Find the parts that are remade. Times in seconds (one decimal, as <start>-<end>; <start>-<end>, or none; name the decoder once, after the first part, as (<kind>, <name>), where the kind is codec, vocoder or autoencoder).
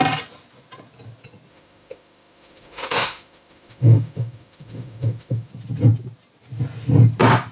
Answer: 1.5-5.5 (autoencoder, DAC-VAE)